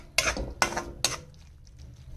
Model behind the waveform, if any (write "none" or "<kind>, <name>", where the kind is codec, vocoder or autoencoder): none